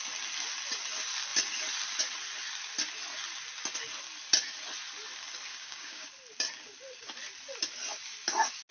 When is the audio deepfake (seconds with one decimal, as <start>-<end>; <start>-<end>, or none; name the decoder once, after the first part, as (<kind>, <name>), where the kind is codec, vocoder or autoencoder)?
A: 5.5-6.1 (codec, DAC)